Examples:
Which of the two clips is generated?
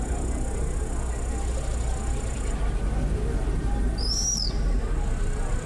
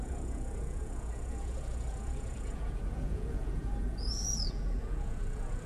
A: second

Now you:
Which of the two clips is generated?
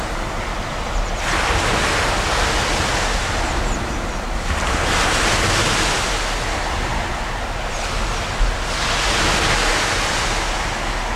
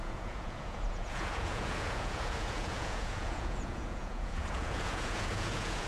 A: second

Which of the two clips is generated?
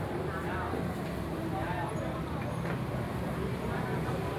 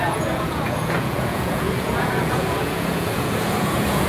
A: second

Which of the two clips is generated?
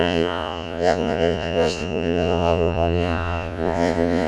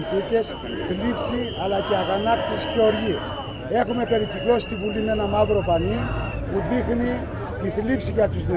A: first